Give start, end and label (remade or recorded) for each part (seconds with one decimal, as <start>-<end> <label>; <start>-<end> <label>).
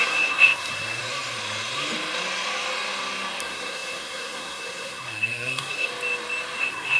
0.0-1.0 remade; 1.0-3.4 recorded; 3.4-5.9 remade; 5.9-6.6 recorded; 6.6-7.0 remade